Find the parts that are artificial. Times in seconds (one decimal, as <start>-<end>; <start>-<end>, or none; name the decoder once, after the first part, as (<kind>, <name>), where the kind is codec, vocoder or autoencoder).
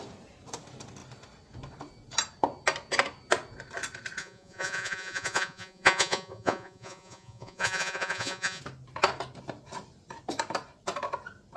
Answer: 4.2-8.6 (vocoder, Vocos)